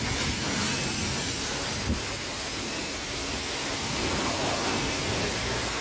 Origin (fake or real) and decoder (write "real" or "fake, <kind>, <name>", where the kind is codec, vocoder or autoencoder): real